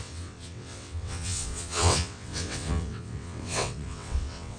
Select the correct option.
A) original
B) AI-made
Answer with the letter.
B